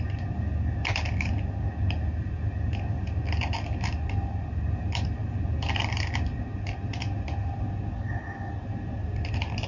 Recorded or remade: recorded